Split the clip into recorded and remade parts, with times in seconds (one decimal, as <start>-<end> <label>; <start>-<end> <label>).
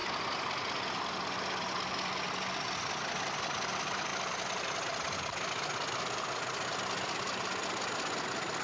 0.0-8.6 recorded